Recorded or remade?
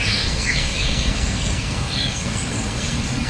remade